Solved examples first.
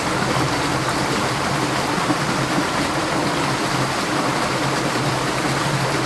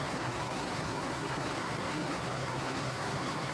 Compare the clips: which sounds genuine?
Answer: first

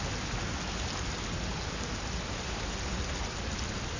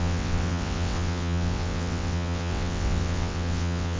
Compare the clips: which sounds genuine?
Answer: first